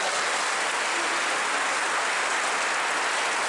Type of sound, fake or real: real